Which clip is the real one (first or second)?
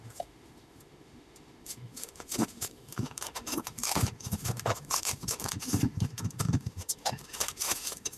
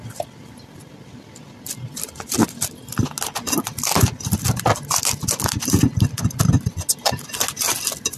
second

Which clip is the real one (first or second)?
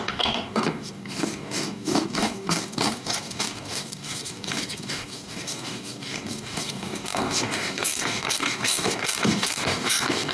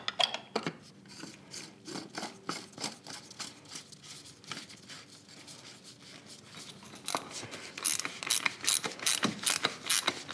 second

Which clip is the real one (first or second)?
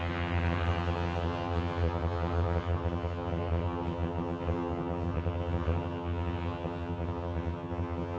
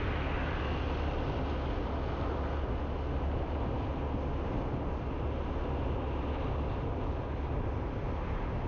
second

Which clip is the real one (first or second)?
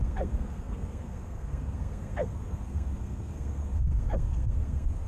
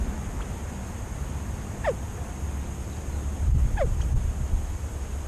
second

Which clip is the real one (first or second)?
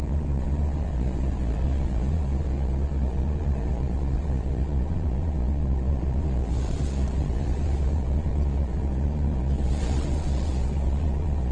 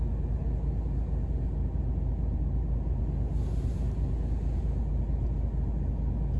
second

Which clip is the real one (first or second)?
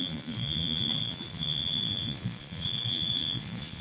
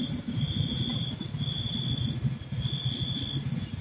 second